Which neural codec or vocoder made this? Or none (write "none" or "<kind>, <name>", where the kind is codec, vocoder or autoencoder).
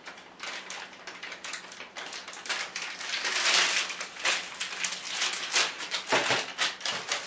none